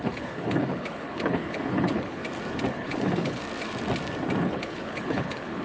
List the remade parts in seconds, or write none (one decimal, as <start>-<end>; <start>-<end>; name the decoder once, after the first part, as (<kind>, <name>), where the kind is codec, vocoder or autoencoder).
0.0-2.2 (codec, HILCodec); 2.7-3.4; 4.4-5.6